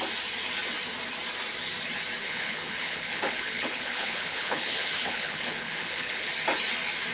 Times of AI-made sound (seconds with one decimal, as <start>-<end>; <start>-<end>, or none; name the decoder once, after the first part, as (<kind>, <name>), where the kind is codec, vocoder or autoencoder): 2.2-6.3 (codec, HILCodec)

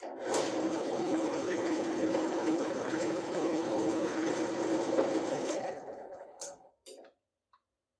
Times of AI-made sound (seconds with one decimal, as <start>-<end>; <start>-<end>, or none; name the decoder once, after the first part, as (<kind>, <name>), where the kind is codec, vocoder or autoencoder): 0.7-4.3 (codec, HILCodec); 5.3-6.7

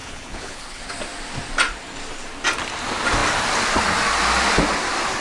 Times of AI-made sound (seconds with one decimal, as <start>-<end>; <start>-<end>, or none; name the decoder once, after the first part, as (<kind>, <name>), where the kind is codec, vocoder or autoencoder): 0.0-0.9 (codec, HILCodec)

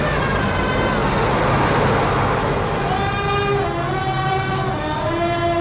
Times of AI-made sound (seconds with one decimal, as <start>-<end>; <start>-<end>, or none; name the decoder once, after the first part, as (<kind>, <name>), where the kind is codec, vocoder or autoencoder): none

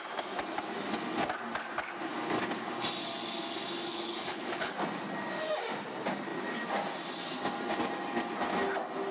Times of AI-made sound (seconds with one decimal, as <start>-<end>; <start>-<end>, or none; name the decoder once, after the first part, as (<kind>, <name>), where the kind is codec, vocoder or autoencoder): 3.9-4.7 (codec, HILCodec)

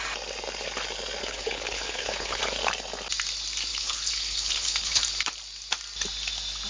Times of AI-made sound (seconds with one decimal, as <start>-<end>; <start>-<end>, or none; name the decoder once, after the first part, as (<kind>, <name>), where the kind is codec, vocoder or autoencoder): 1.2-2.4 (codec, HILCodec); 3.7-5.0

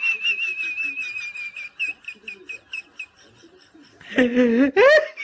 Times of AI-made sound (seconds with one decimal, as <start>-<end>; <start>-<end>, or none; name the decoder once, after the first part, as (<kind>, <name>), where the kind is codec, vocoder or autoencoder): none